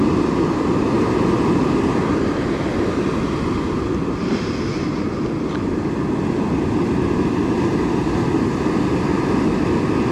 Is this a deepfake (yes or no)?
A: no